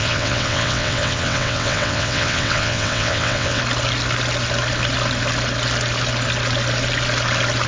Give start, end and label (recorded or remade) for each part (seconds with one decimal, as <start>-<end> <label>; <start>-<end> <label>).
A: 0.0-3.6 remade; 3.6-7.7 recorded